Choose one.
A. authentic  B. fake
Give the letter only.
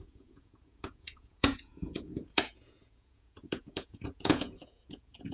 B